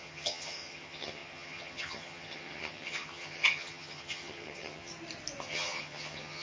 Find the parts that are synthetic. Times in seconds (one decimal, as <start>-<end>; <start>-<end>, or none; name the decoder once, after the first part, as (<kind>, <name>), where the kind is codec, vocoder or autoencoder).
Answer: 0.0-4.9 (vocoder, HiFi-GAN); 5.4-6.4